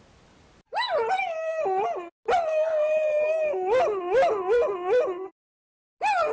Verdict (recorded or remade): recorded